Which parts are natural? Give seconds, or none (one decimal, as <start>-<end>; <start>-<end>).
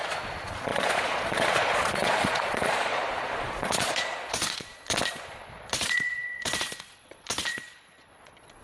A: none